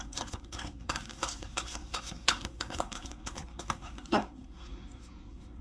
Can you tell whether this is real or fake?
fake